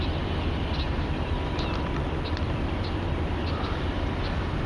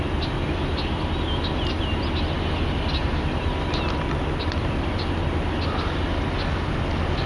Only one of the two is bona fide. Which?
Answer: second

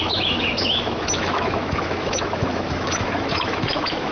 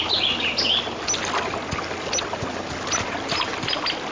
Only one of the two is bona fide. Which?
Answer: second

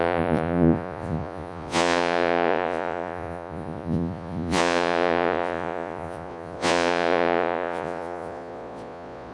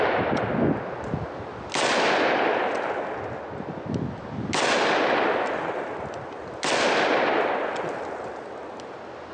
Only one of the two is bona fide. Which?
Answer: second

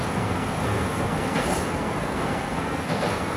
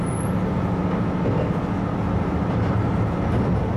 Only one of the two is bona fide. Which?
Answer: second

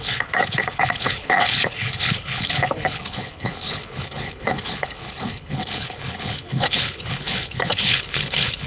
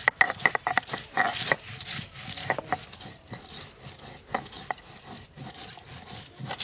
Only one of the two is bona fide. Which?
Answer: second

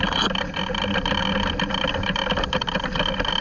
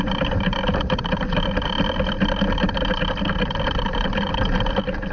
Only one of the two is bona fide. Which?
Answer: first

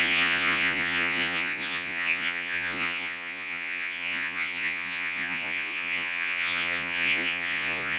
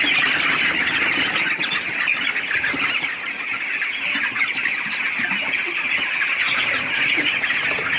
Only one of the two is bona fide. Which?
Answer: second